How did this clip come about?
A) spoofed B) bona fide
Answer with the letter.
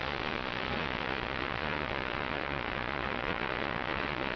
A